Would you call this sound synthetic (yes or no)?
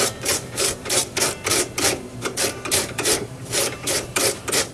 yes